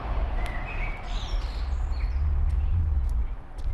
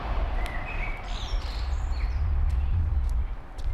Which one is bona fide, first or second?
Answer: first